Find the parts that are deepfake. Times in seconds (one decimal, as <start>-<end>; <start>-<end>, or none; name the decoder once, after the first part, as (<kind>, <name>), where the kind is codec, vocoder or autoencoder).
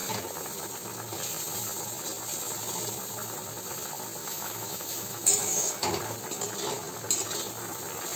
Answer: 4.2-6.0 (autoencoder, DAC-VAE)